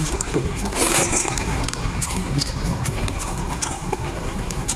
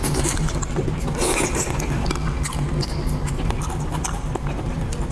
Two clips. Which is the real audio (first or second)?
second